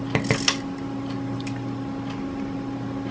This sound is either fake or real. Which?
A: real